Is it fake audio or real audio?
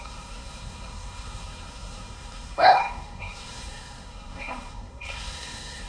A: fake